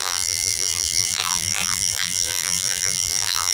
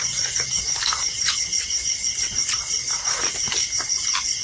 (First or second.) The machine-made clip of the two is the first